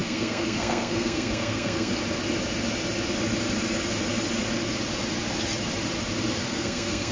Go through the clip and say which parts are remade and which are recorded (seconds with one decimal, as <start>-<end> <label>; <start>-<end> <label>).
0.0-2.0 remade; 2.0-6.3 recorded; 6.3-7.1 remade